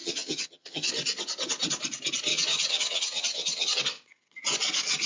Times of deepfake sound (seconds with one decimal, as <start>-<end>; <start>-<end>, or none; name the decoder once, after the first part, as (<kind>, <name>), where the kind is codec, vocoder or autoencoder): 0.0-0.9 (vocoder, HiFi-GAN); 2.3-3.8